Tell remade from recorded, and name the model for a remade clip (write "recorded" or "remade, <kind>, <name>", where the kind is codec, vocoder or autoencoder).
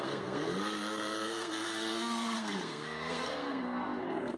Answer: remade, codec, SNAC